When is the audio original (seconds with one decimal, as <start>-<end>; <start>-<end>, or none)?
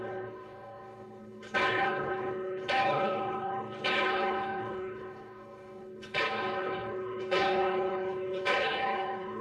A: none